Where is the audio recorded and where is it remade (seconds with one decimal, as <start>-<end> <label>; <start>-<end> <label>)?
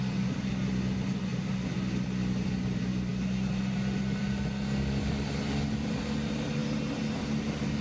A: 0.0-7.8 recorded